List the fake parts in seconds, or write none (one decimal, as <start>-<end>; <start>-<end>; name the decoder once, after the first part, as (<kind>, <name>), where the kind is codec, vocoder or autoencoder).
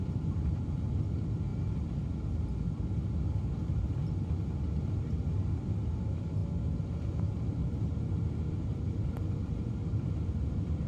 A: 0.0-1.5 (vocoder, BigVGAN v2); 3.2-4.0; 5.6-6.4; 7.1-10.9